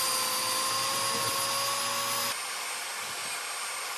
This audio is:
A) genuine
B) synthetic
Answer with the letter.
A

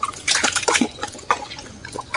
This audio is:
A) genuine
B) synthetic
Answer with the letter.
B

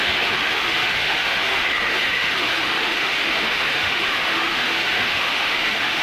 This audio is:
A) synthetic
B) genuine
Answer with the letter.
A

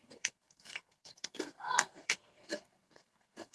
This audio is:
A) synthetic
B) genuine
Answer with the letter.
A